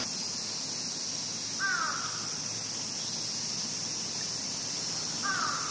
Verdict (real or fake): real